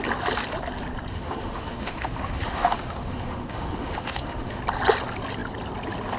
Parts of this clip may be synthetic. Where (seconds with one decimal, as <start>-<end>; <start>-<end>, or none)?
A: 1.1-4.6